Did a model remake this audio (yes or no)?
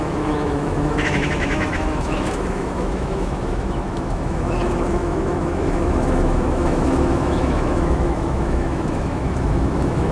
yes